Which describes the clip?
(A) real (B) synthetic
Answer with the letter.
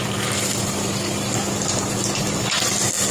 B